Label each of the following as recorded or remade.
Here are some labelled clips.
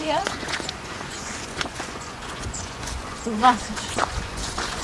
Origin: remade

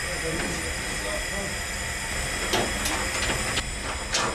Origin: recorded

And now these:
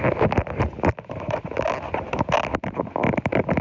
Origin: recorded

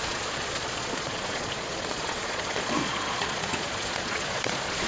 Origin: remade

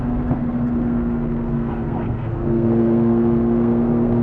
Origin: remade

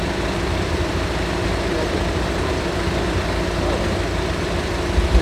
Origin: remade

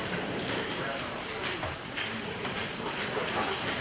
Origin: remade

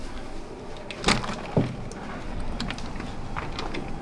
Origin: recorded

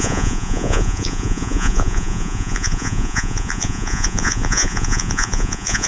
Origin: remade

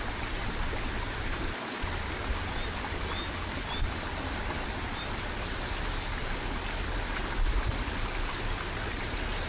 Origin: recorded